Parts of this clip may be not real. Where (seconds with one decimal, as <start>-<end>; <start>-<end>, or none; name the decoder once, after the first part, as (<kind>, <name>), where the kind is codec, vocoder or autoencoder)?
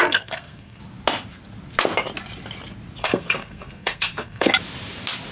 0.0-0.8 (codec, SNAC); 3.0-4.5